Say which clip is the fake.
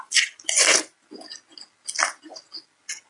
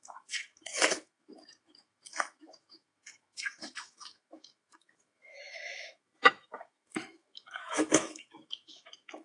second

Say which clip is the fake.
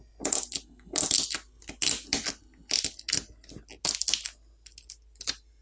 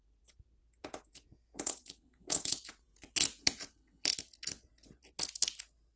second